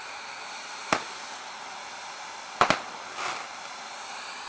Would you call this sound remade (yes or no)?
no